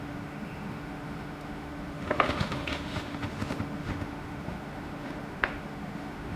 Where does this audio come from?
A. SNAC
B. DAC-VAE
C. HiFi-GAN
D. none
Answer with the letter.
B